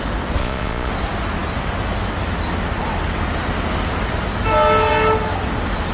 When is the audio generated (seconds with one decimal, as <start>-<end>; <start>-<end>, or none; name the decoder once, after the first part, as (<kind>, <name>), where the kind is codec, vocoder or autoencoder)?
0.4-0.9 (vocoder, Vocos)